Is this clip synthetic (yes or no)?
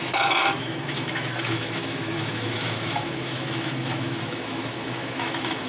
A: yes